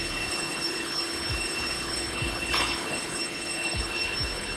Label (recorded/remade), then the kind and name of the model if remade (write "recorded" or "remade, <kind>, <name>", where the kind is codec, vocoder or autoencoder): remade, codec, HILCodec